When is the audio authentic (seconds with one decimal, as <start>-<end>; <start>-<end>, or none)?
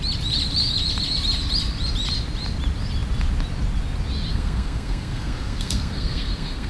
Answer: 0.0-4.3